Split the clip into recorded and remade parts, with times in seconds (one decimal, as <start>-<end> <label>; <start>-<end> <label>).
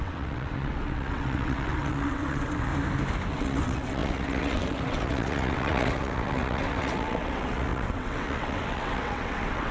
0.0-2.7 remade; 2.7-3.3 recorded; 3.3-9.7 remade